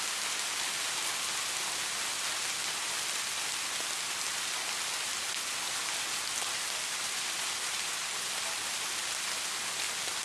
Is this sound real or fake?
real